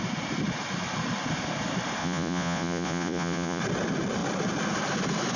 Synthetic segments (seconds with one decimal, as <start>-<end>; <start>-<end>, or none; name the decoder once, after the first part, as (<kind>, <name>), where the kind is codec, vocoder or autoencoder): 2.0-3.6 (vocoder, Vocos)